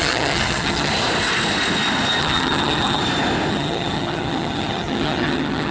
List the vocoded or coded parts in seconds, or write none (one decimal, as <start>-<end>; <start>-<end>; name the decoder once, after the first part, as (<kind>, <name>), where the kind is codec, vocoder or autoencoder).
0.0-0.9 (vocoder, HiFi-GAN); 2.2-3.0; 3.5-5.7